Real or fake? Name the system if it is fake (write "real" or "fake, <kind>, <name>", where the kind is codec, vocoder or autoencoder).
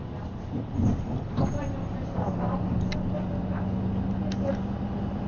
real